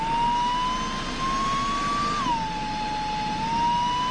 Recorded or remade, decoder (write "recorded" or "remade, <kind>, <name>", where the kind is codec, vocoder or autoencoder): recorded